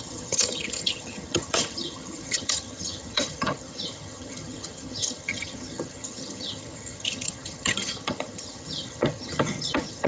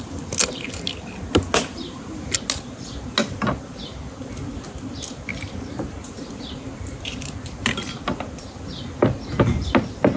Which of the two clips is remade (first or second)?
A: first